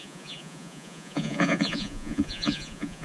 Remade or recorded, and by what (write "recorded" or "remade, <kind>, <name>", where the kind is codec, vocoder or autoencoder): remade, vocoder, Vocos